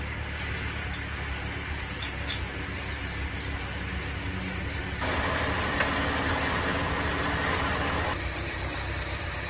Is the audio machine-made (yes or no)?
no